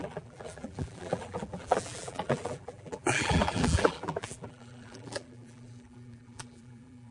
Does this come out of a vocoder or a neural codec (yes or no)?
yes